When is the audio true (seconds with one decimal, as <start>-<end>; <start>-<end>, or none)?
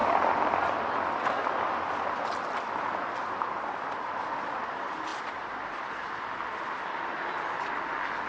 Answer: 0.0-8.3